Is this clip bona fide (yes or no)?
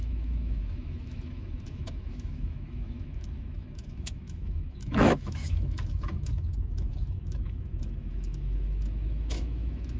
no